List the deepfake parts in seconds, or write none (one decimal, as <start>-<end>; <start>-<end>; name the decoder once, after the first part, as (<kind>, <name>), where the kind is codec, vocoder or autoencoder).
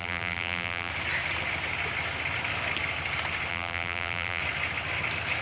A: 0.0-0.9 (vocoder, BigVGAN v2); 3.5-4.4